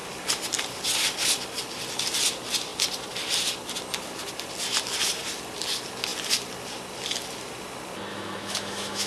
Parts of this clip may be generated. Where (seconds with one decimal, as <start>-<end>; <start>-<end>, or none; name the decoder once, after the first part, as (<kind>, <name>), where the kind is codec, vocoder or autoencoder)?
8.1-9.1 (autoencoder, DAC-VAE)